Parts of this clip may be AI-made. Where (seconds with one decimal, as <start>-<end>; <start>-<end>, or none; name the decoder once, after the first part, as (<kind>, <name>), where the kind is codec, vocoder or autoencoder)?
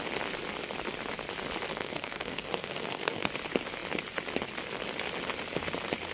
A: 1.7-3.3 (codec, SNAC)